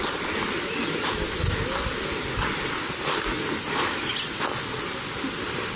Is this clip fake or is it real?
real